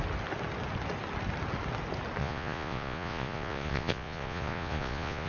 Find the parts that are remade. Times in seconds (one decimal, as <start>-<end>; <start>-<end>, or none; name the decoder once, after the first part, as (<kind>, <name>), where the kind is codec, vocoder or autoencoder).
2.2-5.3 (vocoder, Vocos)